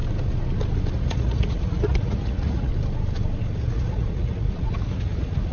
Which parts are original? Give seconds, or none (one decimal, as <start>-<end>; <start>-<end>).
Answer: 0.0-0.9; 2.7-3.6